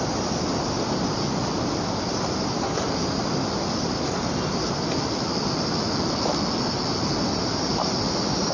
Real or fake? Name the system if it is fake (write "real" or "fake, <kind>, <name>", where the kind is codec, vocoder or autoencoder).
real